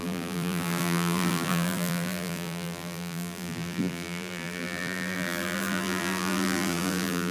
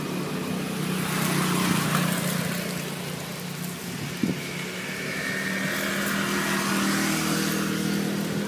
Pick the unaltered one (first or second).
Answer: second